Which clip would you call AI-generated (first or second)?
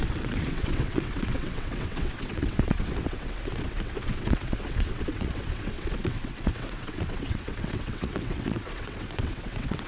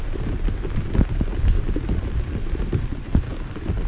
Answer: first